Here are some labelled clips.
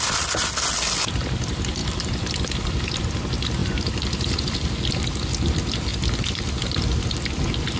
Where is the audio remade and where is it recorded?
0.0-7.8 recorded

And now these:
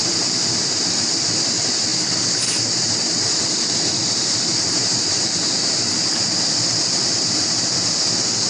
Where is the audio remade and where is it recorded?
0.0-8.5 recorded

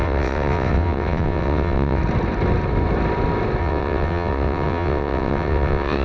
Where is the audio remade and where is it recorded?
0.0-2.0 remade; 2.0-3.6 recorded; 3.6-6.0 remade

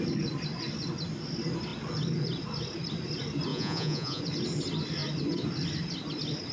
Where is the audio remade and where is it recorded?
0.0-3.5 recorded; 3.5-4.2 remade; 4.2-6.5 recorded